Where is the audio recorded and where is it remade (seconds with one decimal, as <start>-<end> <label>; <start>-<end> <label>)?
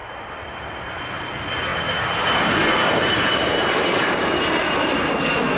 0.0-0.9 remade; 0.9-1.7 recorded; 1.7-5.1 remade; 5.1-5.6 recorded